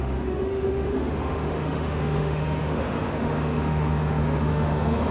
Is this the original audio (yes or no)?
no